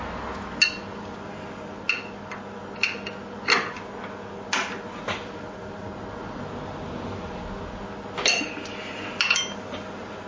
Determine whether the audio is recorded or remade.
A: recorded